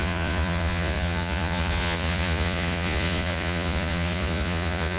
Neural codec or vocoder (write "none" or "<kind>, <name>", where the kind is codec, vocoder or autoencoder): vocoder, Vocos